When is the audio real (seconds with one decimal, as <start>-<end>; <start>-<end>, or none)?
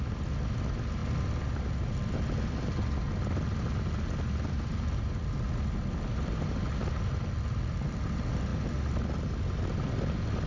0.0-10.5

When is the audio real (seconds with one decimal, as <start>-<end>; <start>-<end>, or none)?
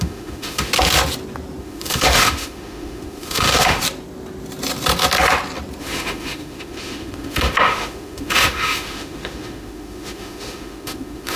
0.7-1.6; 3.8-5.8